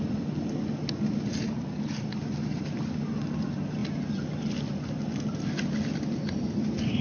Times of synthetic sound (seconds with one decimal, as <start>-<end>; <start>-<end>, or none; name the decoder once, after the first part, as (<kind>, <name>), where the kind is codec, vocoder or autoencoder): none